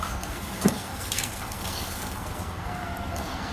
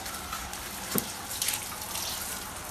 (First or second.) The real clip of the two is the second